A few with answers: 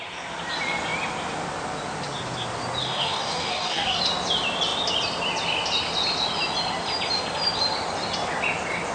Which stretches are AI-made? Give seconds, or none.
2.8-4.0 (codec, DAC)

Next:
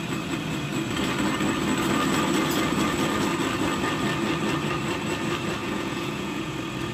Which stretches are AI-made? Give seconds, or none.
5.6-6.5 (vocoder, Vocos)

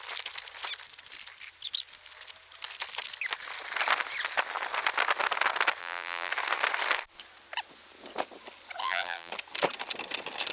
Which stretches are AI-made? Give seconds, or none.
5.8-6.3 (vocoder, BigVGAN v2); 8.8-9.3

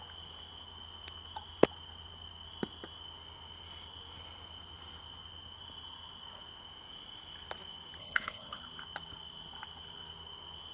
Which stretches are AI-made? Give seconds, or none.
8.0-8.6 (codec, HILCodec)